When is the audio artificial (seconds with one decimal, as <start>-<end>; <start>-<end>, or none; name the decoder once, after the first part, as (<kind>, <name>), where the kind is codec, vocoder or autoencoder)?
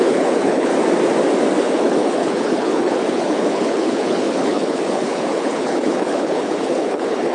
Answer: 0.0-0.7 (codec, HILCodec); 1.6-7.3